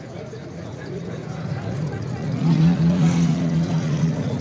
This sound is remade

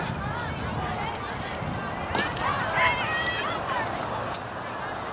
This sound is recorded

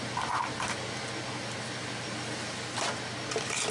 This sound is recorded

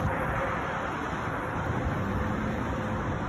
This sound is recorded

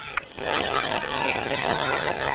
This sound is remade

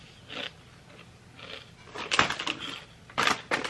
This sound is recorded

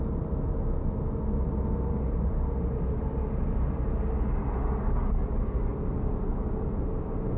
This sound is recorded